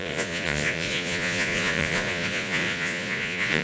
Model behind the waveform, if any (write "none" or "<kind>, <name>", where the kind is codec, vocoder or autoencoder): vocoder, Vocos